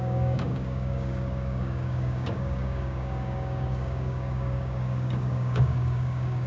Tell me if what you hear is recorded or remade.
remade